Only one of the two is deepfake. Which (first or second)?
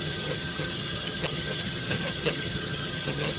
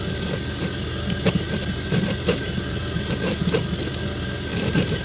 first